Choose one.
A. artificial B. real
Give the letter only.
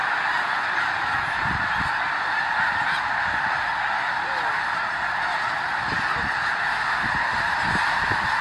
B